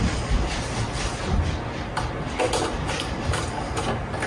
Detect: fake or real real